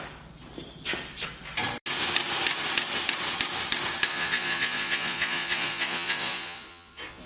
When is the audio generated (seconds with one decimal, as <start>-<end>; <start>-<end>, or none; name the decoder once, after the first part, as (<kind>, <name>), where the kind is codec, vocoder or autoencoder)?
4.1-7.3 (vocoder, Vocos)